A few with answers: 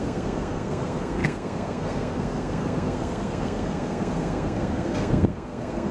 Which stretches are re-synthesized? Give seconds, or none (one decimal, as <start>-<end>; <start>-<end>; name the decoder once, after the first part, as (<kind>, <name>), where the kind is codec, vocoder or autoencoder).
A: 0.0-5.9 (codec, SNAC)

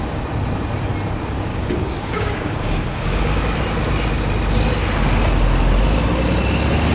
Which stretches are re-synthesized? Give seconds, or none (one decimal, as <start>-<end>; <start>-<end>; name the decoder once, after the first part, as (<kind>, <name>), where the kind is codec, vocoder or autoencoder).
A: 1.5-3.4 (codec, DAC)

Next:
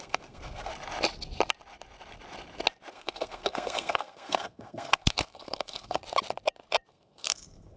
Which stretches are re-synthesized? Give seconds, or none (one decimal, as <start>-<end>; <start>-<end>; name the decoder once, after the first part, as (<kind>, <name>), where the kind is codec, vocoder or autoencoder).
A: 0.0-0.7 (codec, SNAC); 2.9-6.0; 6.9-7.8

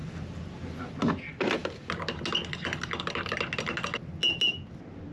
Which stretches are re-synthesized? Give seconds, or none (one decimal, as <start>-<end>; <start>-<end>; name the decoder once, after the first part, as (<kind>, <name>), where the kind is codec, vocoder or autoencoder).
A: none

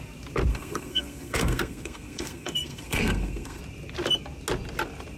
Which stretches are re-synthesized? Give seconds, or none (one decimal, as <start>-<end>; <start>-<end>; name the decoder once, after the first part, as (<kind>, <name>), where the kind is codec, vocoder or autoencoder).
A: 0.5-3.6 (codec, SNAC)